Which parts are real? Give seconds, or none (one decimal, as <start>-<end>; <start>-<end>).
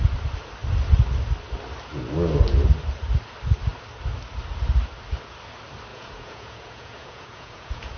0.0-5.9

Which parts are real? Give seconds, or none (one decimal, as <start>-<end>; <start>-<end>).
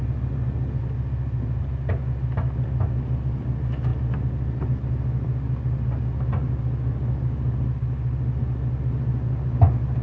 0.0-10.0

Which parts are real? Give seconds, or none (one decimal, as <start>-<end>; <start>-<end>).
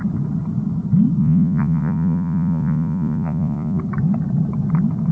0.0-1.2; 3.8-5.1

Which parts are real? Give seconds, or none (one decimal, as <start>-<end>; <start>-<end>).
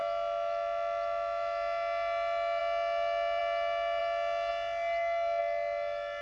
0.0-6.2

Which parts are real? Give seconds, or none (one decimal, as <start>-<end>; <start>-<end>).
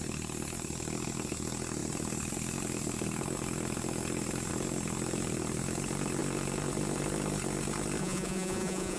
0.0-8.0